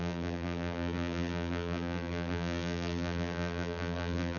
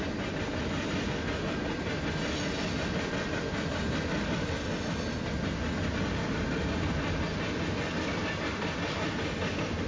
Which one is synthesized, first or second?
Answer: first